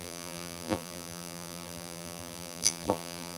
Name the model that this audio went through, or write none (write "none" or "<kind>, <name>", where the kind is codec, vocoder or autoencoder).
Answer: vocoder, BigVGAN v2